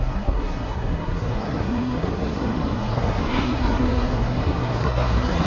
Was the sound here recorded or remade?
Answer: remade